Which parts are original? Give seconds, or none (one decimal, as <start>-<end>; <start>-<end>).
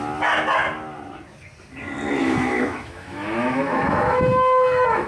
0.0-2.2